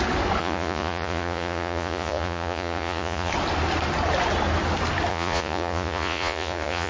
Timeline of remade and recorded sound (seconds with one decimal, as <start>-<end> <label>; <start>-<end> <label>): 0.0-0.4 recorded; 0.4-3.3 remade; 3.3-5.1 recorded; 5.1-6.9 remade